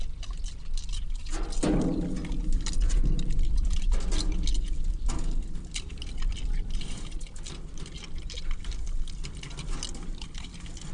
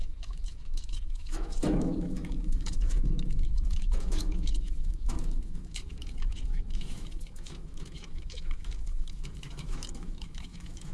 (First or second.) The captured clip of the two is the first